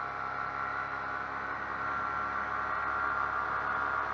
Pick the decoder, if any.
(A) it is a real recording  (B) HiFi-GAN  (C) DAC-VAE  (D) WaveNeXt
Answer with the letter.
A